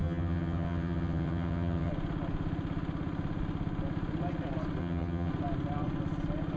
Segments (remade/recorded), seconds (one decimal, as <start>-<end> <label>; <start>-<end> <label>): 0.0-1.9 remade; 1.9-4.8 recorded; 4.8-5.3 remade; 5.3-6.6 recorded